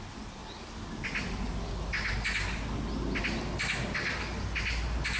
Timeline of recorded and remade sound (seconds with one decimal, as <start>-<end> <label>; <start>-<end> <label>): 0.0-5.2 recorded